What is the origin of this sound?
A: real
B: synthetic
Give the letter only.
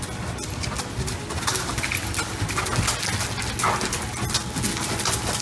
A